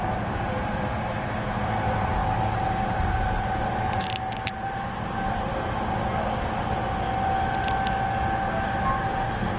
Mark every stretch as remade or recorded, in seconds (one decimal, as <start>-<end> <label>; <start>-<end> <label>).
0.0-5.5 remade; 5.5-9.0 recorded; 9.0-9.6 remade